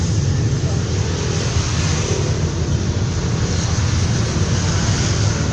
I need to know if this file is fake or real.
real